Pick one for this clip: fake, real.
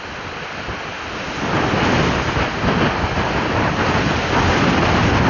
real